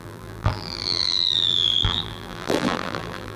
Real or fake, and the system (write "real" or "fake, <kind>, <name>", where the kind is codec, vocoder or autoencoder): fake, vocoder, BigVGAN v2